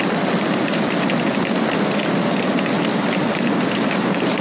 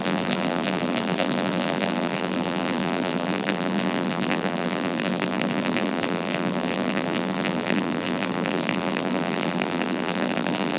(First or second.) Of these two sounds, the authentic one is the first